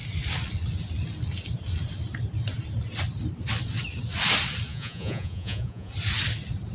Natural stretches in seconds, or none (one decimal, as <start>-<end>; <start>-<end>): 0.0-4.7; 5.9-6.7